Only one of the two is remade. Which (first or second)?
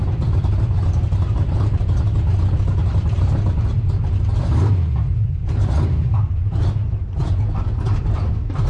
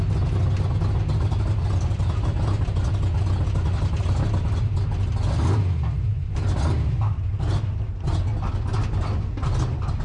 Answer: first